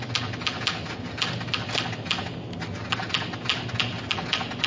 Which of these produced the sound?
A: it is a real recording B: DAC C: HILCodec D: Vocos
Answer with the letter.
A